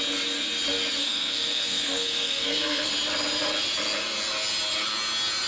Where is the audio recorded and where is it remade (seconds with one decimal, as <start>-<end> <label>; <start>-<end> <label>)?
0.0-1.0 recorded; 1.0-2.9 remade; 2.9-5.5 recorded